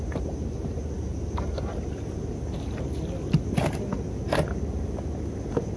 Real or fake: real